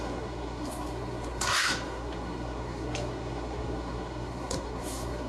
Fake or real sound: fake